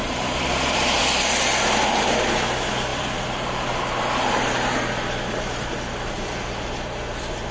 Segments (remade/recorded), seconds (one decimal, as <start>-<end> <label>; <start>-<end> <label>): 0.0-1.0 remade; 1.0-2.9 recorded; 2.9-3.8 remade; 3.8-7.5 recorded